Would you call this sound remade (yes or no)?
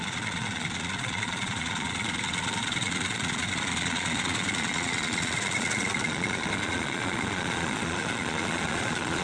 yes